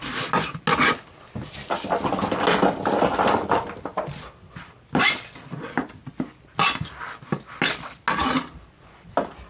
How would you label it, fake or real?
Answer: real